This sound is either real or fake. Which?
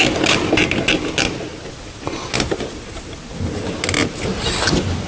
real